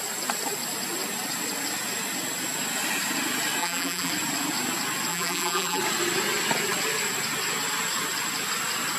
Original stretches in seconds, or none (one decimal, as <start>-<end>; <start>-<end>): 0.0-3.6; 4.1-5.1; 5.8-9.0

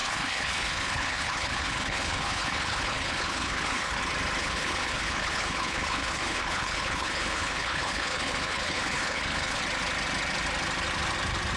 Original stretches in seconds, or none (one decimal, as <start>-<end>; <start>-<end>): 4.0-4.4; 9.6-11.6

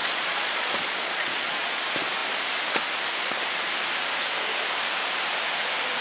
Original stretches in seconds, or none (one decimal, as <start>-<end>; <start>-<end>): 1.8-6.0

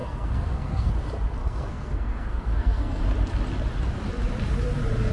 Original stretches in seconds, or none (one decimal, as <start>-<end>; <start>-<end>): 0.9-1.4; 3.0-5.1

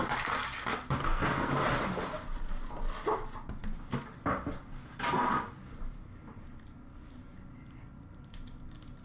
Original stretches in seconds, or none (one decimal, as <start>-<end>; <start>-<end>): 0.0-1.0; 1.5-9.0

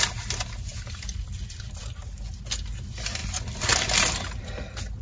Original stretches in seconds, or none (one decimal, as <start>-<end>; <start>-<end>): 0.0-0.7; 2.4-5.0

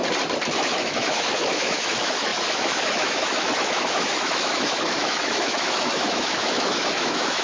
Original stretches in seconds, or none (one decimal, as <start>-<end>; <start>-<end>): 0.0-0.5

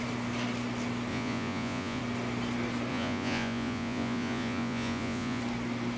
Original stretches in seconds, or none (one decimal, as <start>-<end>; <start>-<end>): 0.0-1.1; 2.0-2.9; 5.4-6.0